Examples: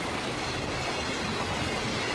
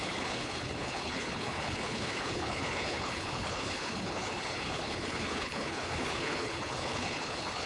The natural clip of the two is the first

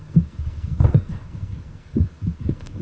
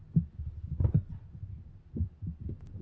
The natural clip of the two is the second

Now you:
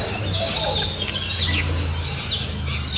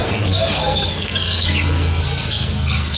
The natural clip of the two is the first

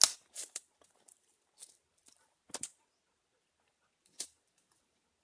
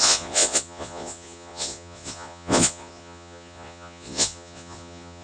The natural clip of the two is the first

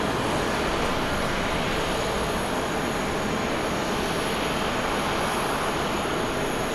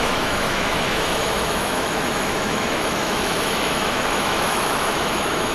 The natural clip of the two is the first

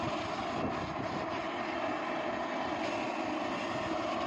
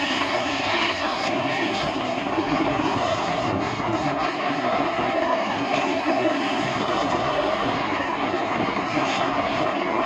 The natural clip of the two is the first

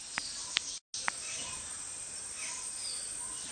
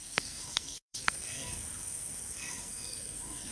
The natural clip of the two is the first